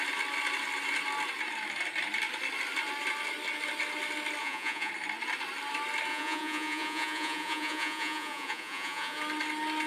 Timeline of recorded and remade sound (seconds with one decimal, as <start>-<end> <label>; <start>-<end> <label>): 0.0-4.4 recorded; 4.4-4.9 remade; 4.9-6.1 recorded; 6.1-9.2 remade; 9.2-9.9 recorded